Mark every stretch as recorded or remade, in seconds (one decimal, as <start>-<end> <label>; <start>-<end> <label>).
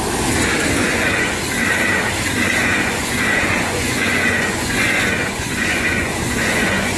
0.0-0.8 recorded; 0.8-1.4 remade; 1.4-2.6 recorded; 2.6-7.0 remade